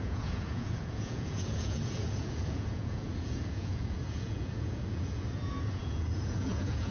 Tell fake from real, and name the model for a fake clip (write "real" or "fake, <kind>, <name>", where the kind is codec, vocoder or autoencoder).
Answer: fake, vocoder, Vocos